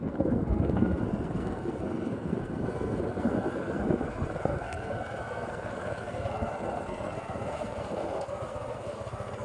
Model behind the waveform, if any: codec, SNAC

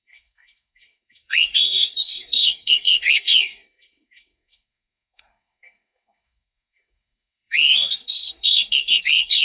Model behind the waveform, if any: codec, SNAC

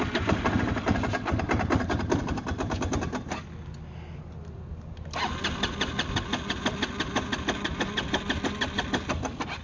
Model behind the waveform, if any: none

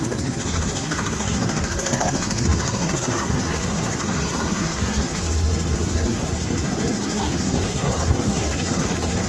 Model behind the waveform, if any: codec, SNAC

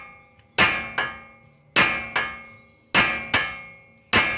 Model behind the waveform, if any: none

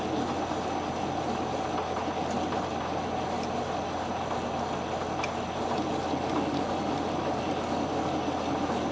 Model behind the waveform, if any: none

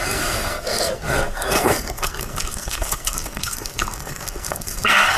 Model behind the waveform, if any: codec, SNAC